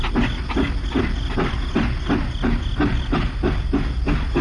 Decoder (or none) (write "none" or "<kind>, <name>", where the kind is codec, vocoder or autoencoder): none